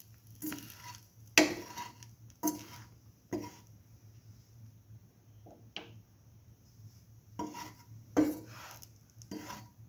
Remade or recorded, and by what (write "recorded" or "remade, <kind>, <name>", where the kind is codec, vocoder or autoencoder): recorded